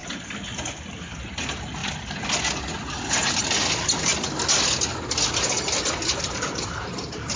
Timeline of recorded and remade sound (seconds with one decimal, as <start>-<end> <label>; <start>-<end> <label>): 0.0-7.4 recorded